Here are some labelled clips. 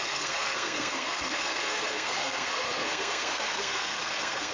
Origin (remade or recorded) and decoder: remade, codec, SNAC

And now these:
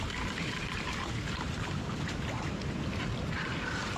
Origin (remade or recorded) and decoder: recorded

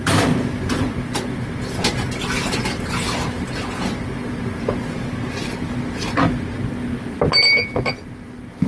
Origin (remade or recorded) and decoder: recorded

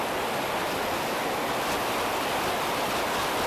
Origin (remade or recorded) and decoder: recorded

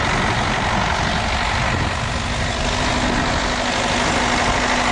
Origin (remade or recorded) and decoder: recorded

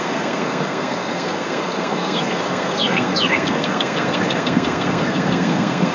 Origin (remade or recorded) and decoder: remade, codec, SNAC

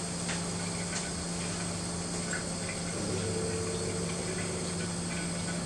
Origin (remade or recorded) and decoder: recorded